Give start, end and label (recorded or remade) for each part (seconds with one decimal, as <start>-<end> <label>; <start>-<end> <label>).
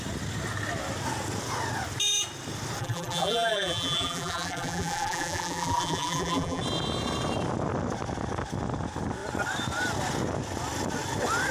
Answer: 0.0-2.8 recorded; 2.8-6.6 remade; 6.6-11.5 recorded